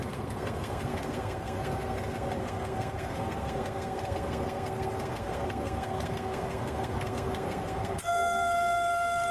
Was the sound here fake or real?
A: fake